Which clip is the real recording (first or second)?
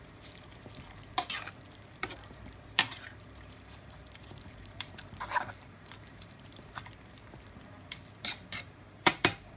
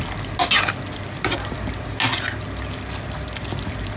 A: second